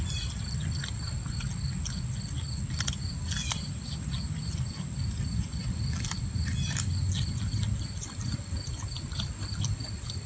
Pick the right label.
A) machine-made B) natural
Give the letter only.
B